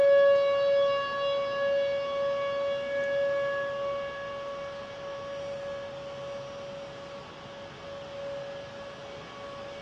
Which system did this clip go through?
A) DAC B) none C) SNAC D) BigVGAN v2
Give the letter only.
B